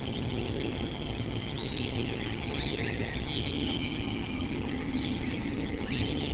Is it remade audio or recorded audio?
remade